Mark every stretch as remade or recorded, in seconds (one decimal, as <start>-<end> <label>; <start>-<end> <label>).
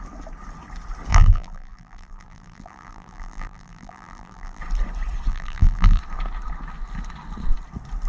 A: 0.0-1.1 recorded; 1.1-4.6 remade; 4.6-5.3 recorded; 5.3-6.0 remade; 6.0-8.1 recorded